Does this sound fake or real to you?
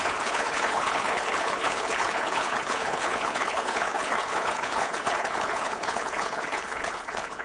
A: fake